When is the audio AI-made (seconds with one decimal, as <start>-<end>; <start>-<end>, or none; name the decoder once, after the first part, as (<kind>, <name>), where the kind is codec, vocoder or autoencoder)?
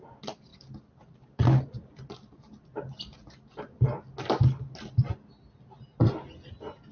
none